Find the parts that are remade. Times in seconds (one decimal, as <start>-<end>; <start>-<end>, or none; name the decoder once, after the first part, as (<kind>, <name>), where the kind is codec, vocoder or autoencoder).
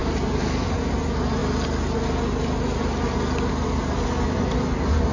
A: none